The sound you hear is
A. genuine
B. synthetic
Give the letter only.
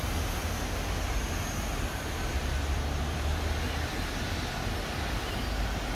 A